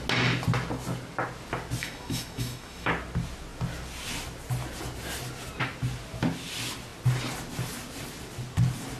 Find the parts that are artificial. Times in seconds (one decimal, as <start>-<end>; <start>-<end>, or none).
1.8-2.9